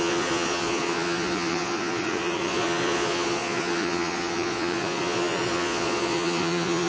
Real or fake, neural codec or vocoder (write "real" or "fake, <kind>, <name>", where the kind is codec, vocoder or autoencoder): fake, vocoder, Vocos